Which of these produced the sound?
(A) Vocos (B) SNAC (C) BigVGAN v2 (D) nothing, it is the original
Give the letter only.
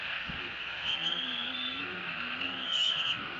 B